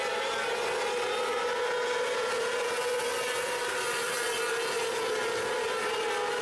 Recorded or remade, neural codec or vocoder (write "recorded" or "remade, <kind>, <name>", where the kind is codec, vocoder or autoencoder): recorded